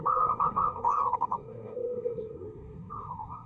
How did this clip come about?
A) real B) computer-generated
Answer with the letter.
B